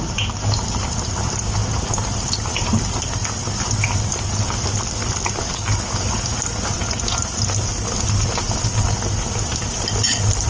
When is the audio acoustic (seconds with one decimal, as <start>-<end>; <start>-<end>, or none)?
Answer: 0.0-10.5